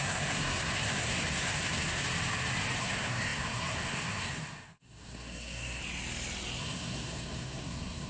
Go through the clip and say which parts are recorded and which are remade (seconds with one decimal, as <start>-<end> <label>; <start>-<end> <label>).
0.0-2.0 remade; 2.0-2.8 recorded; 2.8-5.8 remade; 5.8-6.6 recorded; 6.6-8.1 remade